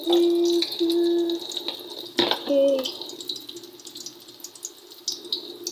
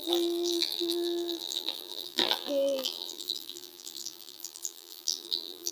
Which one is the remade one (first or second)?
second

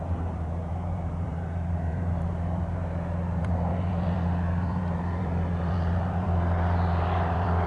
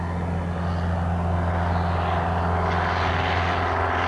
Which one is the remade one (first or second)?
first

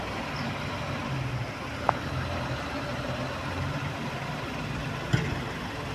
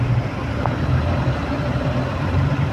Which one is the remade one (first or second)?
second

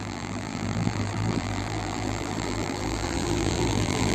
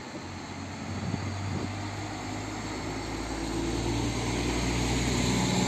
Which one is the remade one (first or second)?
first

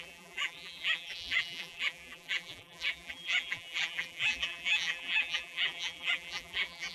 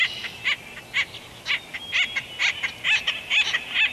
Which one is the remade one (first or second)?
first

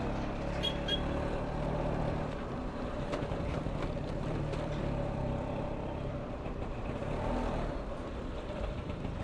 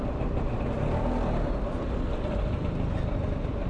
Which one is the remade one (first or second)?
first